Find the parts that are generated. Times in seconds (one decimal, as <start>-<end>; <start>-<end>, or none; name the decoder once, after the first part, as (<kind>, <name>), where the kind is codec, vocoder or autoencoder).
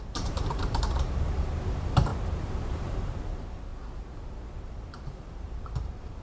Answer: 0.0-2.1 (vocoder, BigVGAN v2); 2.7-3.7; 4.6-6.2